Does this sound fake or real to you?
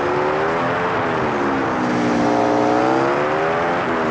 real